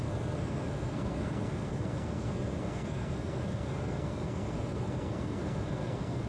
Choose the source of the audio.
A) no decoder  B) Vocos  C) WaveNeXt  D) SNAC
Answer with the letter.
D